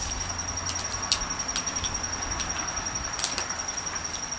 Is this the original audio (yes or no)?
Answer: yes